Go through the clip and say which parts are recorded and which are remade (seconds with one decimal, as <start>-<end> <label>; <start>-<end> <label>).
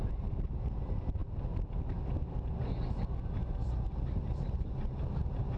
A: 0.0-1.2 remade; 1.2-3.4 recorded; 3.4-5.6 remade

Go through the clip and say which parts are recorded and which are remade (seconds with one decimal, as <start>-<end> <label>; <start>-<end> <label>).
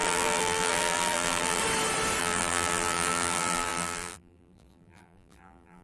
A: 0.0-1.6 remade; 1.6-2.2 recorded; 2.2-5.8 remade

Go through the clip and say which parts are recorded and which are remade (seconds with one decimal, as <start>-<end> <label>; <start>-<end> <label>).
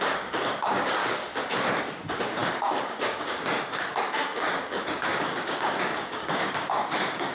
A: 0.0-1.0 remade; 1.0-1.8 recorded; 1.8-7.3 remade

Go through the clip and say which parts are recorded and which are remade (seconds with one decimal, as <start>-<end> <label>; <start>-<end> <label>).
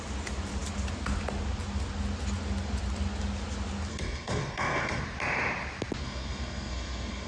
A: 0.0-3.9 recorded; 3.9-5.0 remade; 5.0-6.0 recorded; 6.0-7.3 remade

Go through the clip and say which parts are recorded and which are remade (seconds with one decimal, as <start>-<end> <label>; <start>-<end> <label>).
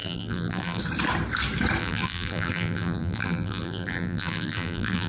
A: 0.0-0.8 remade; 0.8-1.8 recorded; 1.8-5.1 remade